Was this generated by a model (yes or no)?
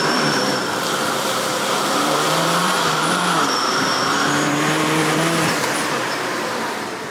yes